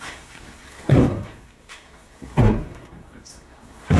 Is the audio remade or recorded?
remade